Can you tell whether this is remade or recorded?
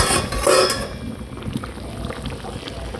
recorded